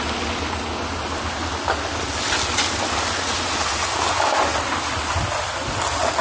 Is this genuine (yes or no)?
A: yes